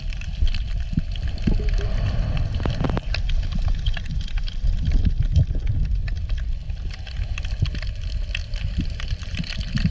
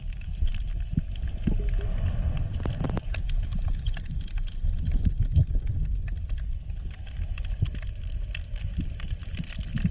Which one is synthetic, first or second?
first